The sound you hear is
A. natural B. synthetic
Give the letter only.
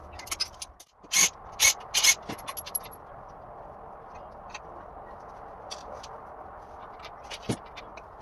A